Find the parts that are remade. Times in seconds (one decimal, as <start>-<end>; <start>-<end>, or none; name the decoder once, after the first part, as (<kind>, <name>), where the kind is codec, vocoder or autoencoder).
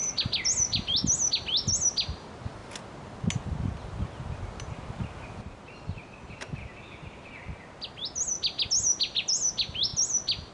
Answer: none